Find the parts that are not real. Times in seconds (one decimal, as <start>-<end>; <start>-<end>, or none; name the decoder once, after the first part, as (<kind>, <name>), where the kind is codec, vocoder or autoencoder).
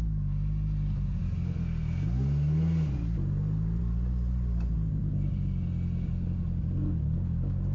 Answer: none